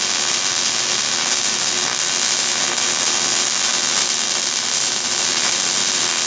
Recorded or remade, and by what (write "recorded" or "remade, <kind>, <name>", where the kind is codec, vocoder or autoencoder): recorded